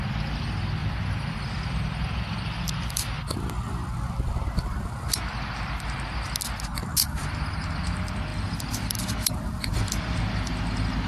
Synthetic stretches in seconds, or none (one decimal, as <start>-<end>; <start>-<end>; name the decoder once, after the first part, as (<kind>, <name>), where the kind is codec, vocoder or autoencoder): 0.8-4.3 (vocoder, BigVGAN v2); 7.2-7.8; 8.3-10.2